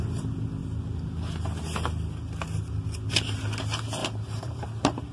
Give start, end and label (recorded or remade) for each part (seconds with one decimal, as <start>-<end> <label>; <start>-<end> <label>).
0.0-4.0 recorded; 4.0-4.6 remade; 4.6-5.1 recorded